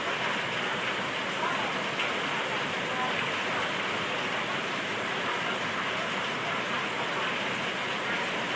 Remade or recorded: recorded